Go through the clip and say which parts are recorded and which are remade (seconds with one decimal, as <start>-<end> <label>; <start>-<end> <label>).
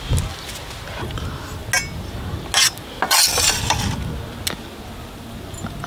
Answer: 0.0-5.9 recorded